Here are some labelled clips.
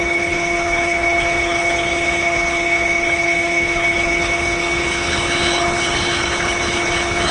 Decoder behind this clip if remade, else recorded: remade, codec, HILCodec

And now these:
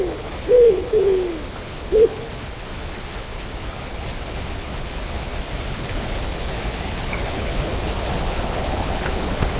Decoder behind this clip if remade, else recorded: remade, codec, HILCodec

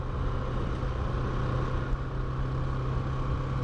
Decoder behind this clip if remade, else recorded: recorded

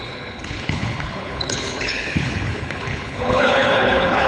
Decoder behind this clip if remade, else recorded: remade, codec, HILCodec